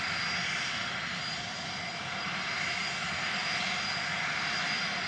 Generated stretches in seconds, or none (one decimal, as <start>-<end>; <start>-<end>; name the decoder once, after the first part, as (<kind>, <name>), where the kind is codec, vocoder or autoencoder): none